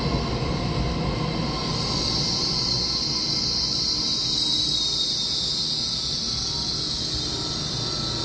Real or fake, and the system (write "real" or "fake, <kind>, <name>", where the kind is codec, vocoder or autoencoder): real